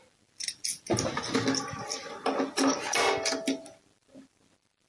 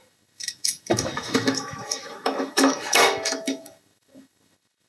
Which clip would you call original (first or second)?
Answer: first